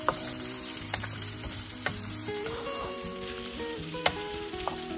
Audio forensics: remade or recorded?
remade